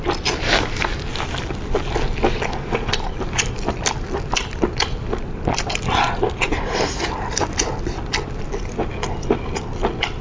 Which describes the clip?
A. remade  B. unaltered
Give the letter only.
B